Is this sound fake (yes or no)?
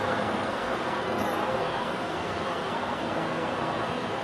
yes